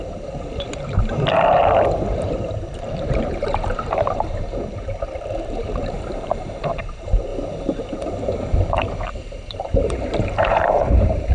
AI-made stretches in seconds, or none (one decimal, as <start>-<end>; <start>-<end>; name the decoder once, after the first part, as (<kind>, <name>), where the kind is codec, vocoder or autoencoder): 0.0-1.1 (vocoder, BigVGAN v2); 2.1-7.3; 8.6-11.3